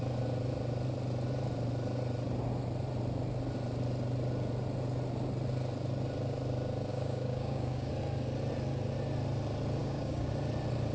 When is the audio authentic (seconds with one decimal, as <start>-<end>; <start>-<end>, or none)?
0.0-6.9; 7.9-9.8; 10.3-10.9